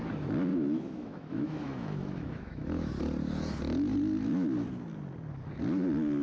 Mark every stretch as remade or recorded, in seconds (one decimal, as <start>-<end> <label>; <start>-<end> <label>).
0.0-0.5 recorded; 0.5-2.9 remade; 2.9-6.2 recorded